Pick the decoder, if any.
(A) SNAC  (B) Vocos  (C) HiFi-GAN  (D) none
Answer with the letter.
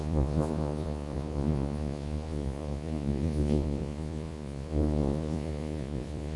B